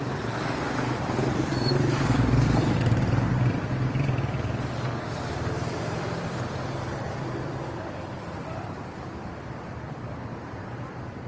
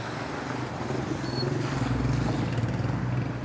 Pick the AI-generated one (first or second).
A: first